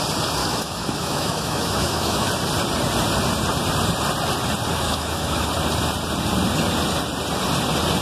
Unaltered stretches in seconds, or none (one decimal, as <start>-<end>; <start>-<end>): 0.0-0.4; 2.3-4.7; 5.5-8.0